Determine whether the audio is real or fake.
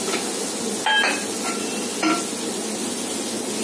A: real